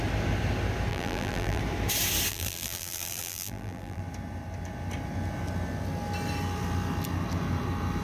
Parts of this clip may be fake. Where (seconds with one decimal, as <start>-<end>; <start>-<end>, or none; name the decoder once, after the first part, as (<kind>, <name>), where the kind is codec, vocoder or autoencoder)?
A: 0.9-1.6 (vocoder, BigVGAN v2); 2.3-4.0